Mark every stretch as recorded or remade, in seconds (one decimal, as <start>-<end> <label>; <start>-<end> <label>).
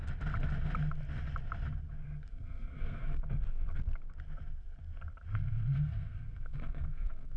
0.0-2.3 recorded; 2.3-3.2 remade; 3.2-5.3 recorded; 5.3-7.4 remade